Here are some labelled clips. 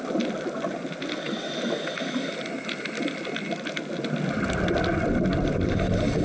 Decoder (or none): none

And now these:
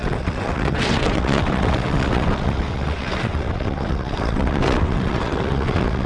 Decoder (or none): vocoder, WaveNeXt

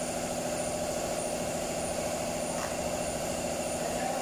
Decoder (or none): none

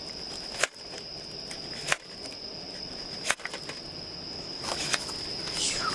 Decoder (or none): none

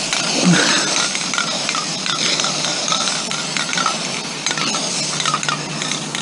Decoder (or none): none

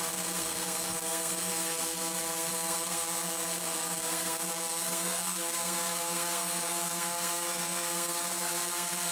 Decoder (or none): codec, SNAC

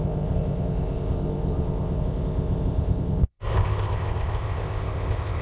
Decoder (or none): codec, ZipCodec